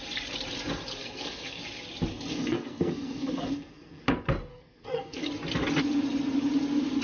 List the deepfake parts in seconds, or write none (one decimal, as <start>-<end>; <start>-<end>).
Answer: 1.0-1.6; 2.1-4.0; 4.5-5.3